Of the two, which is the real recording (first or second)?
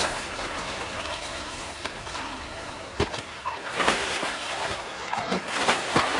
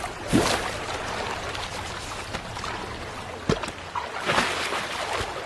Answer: second